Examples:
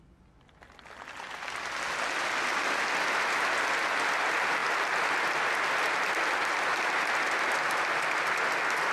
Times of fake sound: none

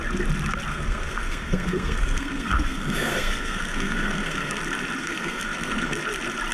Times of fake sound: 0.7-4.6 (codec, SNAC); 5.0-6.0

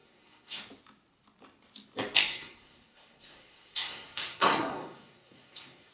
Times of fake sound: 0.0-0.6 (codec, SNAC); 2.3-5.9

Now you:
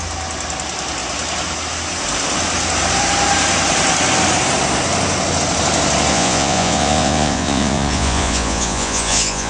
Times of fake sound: 6.1-9.5 (vocoder, Vocos)

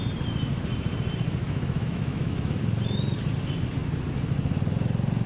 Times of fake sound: 1.4-2.6 (autoencoder, DAC-VAE)